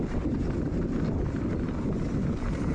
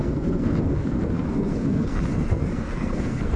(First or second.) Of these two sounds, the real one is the first